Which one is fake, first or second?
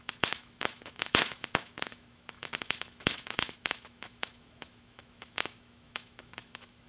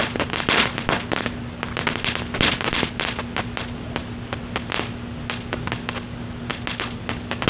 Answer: first